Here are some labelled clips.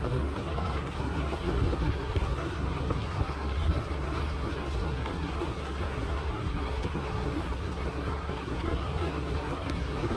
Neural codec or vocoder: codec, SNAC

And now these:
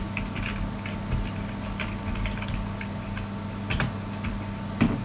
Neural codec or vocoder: none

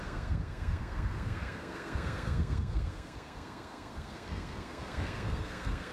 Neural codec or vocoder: codec, SNAC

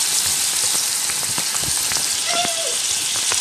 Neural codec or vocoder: none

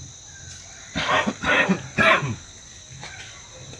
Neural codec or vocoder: none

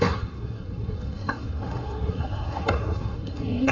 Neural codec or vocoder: codec, SNAC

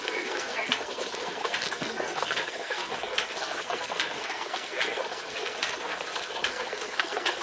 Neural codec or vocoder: codec, SNAC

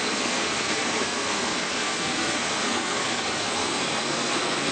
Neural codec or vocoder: codec, SNAC